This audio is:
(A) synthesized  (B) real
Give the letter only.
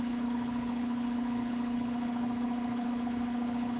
A